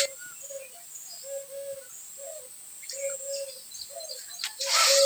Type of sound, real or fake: real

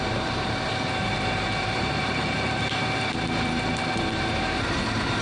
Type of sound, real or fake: fake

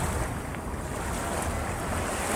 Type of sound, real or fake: real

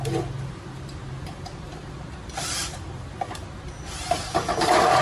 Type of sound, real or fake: real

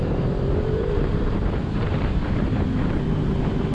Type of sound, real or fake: fake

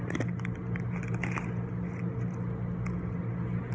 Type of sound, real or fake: real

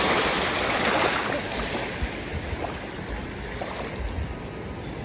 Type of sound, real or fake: real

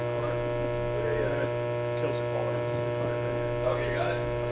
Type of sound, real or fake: real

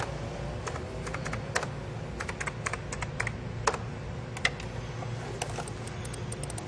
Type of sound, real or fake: real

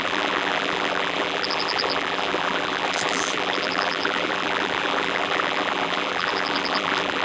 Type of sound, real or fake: fake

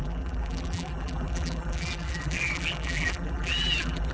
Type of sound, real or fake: fake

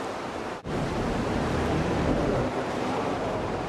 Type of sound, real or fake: fake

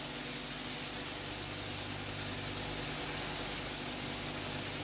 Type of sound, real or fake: real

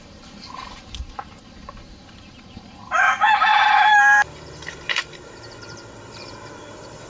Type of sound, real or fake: fake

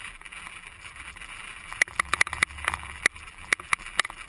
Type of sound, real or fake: fake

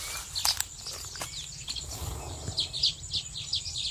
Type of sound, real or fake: real